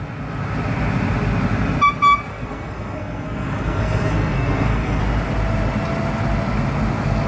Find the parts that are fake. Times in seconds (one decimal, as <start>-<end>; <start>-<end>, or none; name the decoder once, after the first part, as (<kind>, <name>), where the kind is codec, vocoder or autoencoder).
2.3-5.0 (codec, SNAC)